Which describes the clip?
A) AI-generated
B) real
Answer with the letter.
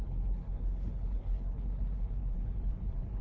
A